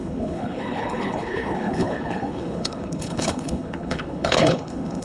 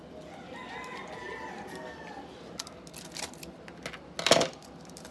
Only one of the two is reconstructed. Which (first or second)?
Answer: first